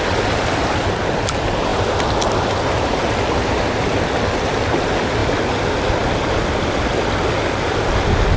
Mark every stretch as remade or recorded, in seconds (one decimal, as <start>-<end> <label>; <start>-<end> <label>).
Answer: 0.0-8.4 recorded